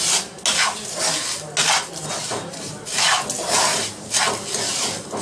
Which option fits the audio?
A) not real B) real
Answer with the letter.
B